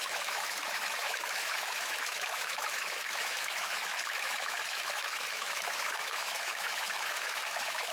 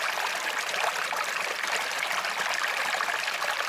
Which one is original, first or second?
second